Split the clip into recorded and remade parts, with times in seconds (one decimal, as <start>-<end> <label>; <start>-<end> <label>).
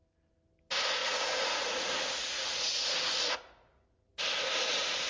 0.0-1.0 recorded; 1.0-4.1 remade; 4.1-5.1 recorded